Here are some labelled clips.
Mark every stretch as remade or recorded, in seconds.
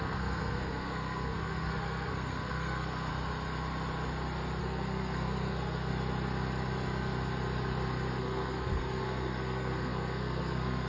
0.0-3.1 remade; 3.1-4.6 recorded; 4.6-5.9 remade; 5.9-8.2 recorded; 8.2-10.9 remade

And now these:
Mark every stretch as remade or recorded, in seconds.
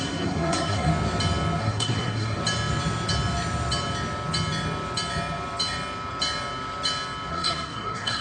0.0-0.9 remade; 0.9-1.6 recorded; 1.6-2.4 remade; 2.4-7.3 recorded; 7.3-8.2 remade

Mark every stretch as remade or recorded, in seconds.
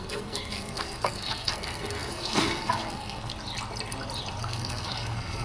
0.0-3.3 remade; 3.3-4.4 recorded; 4.4-5.4 remade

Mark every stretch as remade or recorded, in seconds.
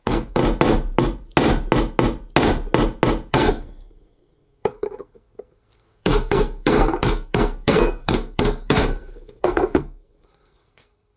0.0-0.4 remade; 0.4-3.3 recorded; 3.3-11.2 remade